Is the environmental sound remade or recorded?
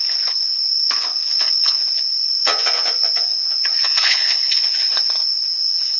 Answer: remade